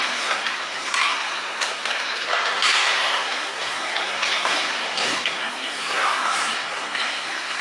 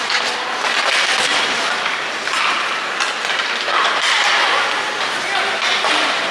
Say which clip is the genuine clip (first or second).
second